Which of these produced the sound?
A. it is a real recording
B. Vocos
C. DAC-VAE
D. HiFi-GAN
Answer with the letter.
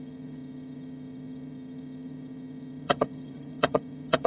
D